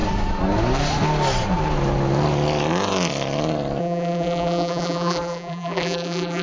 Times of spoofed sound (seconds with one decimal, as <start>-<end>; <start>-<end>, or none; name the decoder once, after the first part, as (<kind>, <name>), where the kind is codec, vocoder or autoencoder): 3.8-6.4 (vocoder, BigVGAN v2)